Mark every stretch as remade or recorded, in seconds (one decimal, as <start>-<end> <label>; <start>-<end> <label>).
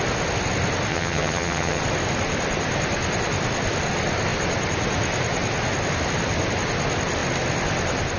0.0-0.9 recorded; 0.9-1.8 remade; 1.8-8.2 recorded